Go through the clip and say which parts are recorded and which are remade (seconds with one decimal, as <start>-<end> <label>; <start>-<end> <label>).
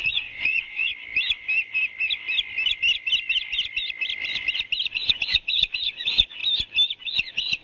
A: 0.0-0.9 remade; 0.9-4.9 recorded; 4.9-6.4 remade; 6.4-7.0 recorded; 7.0-7.6 remade